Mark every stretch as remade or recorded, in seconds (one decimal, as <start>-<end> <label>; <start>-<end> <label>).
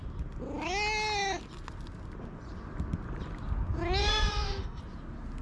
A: 0.0-4.0 recorded; 4.0-4.8 remade; 4.8-5.4 recorded